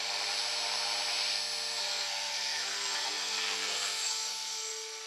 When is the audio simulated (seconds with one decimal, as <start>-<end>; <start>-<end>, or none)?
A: 1.8-5.1